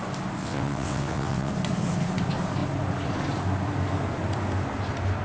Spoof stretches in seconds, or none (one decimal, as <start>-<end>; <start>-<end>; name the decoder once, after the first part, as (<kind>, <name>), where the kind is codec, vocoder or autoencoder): 0.4-1.5 (vocoder, WaveNeXt)